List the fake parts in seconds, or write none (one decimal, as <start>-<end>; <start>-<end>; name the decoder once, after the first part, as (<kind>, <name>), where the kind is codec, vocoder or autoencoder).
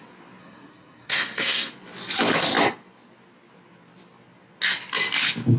0.4-1.7 (codec, SNAC)